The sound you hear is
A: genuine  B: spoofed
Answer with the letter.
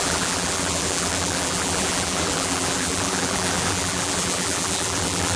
B